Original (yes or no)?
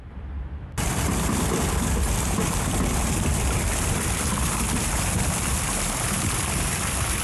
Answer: no